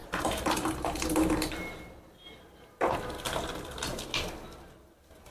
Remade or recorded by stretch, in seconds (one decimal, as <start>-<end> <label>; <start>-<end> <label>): 0.0-0.7 remade; 0.7-5.3 recorded